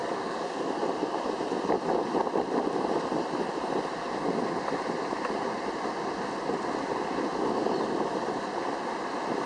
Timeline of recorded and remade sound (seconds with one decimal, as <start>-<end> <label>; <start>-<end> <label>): 0.0-0.8 remade; 0.8-9.5 recorded